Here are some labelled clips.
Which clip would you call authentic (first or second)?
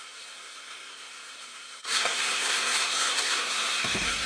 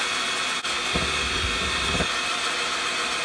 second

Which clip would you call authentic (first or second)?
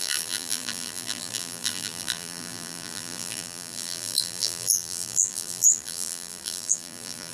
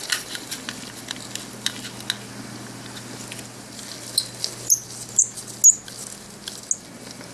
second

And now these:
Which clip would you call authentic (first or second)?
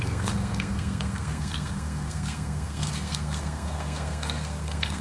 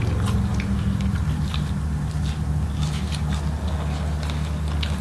second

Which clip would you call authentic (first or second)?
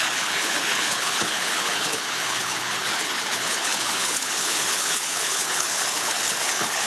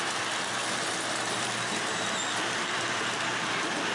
second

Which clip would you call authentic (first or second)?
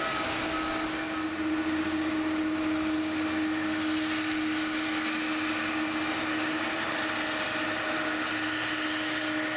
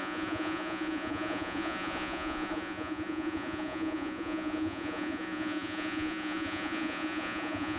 first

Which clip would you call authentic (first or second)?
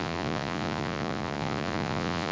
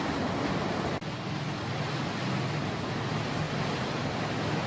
second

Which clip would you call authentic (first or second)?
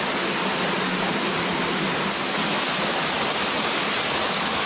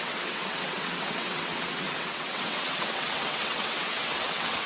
first